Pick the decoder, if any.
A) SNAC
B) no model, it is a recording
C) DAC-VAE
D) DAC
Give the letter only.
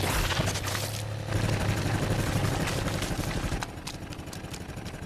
B